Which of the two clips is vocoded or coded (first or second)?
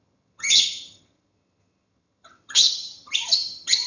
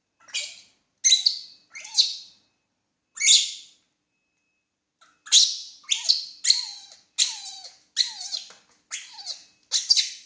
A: first